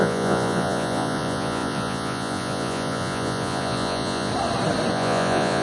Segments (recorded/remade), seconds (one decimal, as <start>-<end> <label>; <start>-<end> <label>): 0.0-4.3 remade; 4.3-4.9 recorded; 4.9-5.6 remade